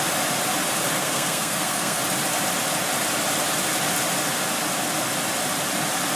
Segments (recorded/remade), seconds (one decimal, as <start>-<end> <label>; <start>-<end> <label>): 0.0-1.0 recorded; 1.0-2.0 remade; 2.0-6.2 recorded